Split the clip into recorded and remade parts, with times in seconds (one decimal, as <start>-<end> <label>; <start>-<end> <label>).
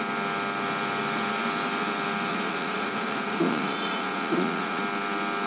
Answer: 0.0-2.3 recorded; 2.3-4.8 remade; 4.8-5.5 recorded